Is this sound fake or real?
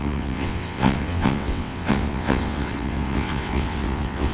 fake